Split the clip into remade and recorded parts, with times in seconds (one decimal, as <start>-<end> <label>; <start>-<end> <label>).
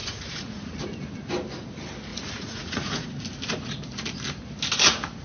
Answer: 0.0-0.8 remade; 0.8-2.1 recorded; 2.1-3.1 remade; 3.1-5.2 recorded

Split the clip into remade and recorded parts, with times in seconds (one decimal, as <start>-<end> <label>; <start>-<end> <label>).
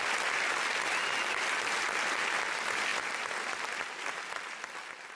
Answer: 0.0-5.2 recorded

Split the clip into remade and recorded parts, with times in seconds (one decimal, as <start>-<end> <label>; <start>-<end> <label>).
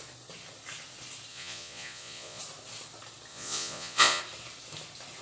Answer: 0.0-1.3 recorded; 1.3-2.4 remade; 2.4-3.3 recorded; 3.3-4.2 remade; 4.2-5.2 recorded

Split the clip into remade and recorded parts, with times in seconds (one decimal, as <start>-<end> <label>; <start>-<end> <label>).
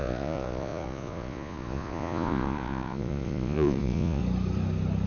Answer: 0.0-4.2 remade; 4.2-5.1 recorded